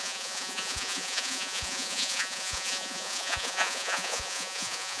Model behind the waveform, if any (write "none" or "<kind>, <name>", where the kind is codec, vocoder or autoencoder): vocoder, Vocos